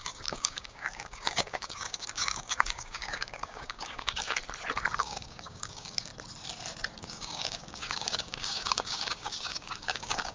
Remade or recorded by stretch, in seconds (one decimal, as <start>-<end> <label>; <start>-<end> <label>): 0.0-4.4 remade; 4.4-5.0 recorded; 5.0-6.1 remade; 6.1-7.0 recorded; 7.0-10.3 remade